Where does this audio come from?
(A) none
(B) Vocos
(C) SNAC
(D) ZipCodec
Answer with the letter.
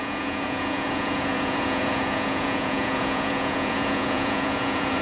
B